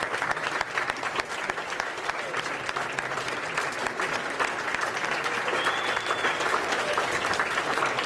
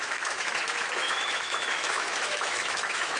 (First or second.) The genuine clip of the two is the first